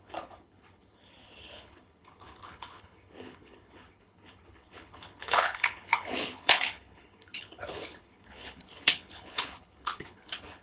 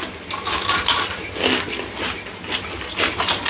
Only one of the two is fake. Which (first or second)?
first